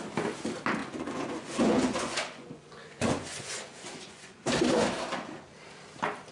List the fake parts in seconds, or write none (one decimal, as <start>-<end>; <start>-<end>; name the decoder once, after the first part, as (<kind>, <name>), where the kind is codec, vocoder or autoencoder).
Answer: 0.8-4.4 (vocoder, Vocos)

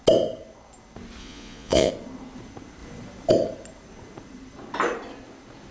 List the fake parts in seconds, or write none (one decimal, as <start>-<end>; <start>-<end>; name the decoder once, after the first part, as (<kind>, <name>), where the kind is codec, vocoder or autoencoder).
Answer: 1.2-1.9 (vocoder, Vocos)

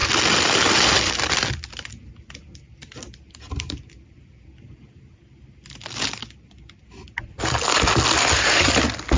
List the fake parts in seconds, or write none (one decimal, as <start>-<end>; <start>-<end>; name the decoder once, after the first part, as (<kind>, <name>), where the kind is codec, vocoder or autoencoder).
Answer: none

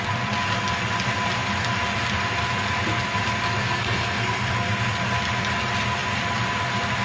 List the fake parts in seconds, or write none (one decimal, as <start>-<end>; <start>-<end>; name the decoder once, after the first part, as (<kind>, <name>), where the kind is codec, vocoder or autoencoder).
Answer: 3.6-4.8 (codec, SNAC)